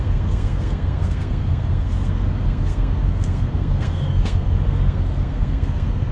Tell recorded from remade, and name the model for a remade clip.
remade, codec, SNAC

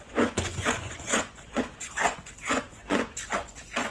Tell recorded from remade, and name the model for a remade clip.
remade, vocoder, Vocos